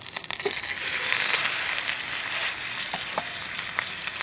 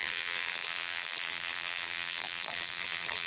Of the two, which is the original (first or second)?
first